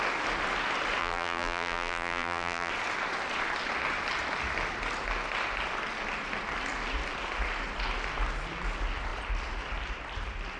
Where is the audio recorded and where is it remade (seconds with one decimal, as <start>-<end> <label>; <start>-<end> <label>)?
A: 0.0-1.0 recorded; 1.0-2.7 remade; 2.7-10.6 recorded